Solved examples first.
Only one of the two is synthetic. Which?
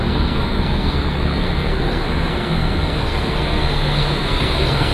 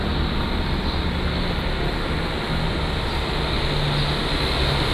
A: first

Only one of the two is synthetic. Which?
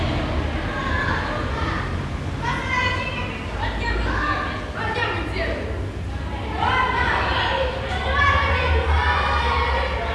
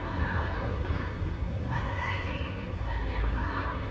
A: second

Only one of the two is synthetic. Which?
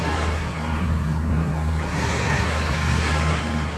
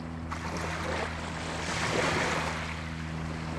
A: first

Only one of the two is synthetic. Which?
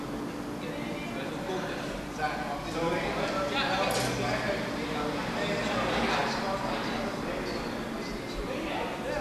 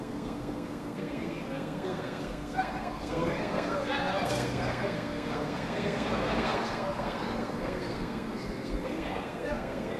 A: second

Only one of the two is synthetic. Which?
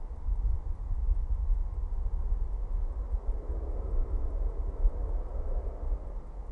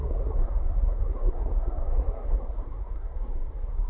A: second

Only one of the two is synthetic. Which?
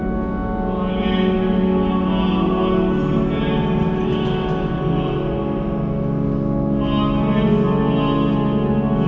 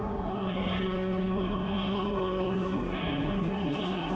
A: second